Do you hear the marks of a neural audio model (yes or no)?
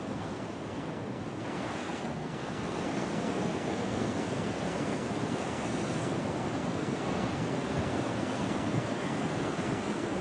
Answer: yes